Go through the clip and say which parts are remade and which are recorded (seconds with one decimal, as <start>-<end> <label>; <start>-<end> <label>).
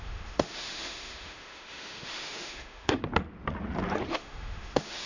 0.0-3.0 remade; 3.0-4.1 recorded; 4.1-5.1 remade